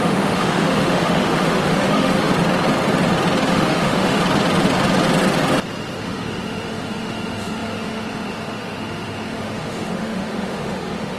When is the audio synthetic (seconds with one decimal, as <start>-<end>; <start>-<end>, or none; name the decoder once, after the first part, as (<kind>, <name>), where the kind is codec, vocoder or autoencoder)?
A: 0.0-2.3 (autoencoder, DAC-VAE); 3.5-4.2; 6.0-11.2